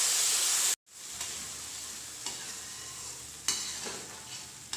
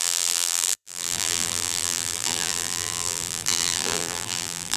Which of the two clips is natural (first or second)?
first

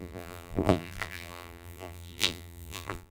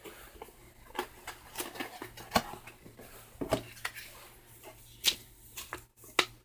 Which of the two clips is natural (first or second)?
second